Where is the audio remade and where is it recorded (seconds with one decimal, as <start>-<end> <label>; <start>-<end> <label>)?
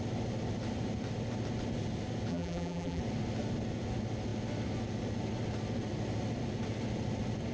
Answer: 0.0-2.3 recorded; 2.3-3.0 remade; 3.0-7.5 recorded